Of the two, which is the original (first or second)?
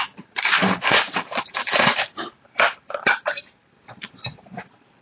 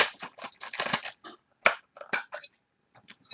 second